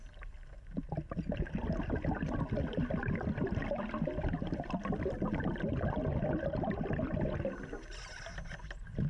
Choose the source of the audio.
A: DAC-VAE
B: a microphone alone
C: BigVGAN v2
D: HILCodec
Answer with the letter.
B